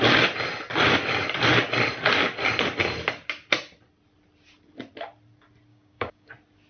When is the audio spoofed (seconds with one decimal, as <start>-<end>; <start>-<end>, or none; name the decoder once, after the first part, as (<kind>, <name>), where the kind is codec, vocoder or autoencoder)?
5.7-6.3 (codec, DAC)